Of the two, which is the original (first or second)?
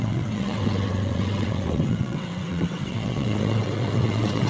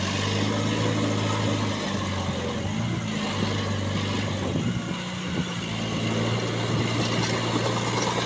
second